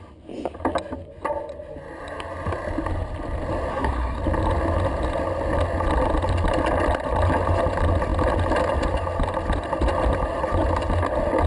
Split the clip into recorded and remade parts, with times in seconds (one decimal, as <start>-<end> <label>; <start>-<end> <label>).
0.0-3.7 recorded; 3.7-4.2 remade; 4.2-11.5 recorded